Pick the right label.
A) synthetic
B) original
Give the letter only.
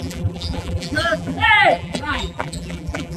A